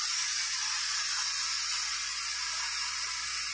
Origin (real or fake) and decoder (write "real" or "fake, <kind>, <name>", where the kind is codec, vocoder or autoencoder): real